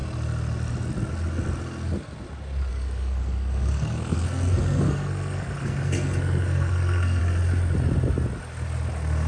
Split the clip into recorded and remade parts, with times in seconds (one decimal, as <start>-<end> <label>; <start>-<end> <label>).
0.0-2.7 recorded; 2.7-7.2 remade; 7.2-9.3 recorded